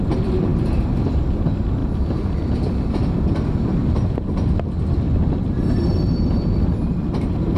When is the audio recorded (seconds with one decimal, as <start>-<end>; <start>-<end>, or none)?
1.8-5.6